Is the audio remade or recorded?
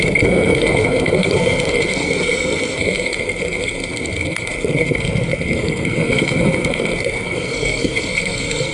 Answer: remade